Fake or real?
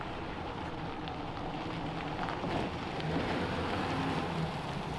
fake